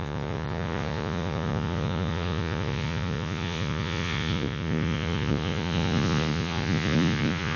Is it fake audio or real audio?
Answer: fake